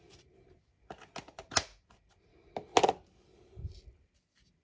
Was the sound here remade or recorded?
recorded